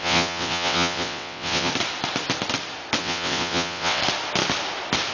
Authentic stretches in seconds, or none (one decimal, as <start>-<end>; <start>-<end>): 1.7-3.0; 4.0-5.1